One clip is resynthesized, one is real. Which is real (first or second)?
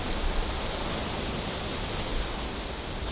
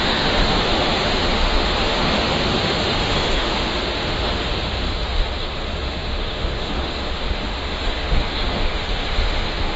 first